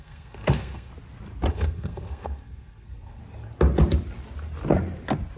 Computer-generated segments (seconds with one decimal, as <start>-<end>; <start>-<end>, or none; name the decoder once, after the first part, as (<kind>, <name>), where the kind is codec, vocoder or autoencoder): 0.0-0.9 (codec, SNAC); 1.5-3.2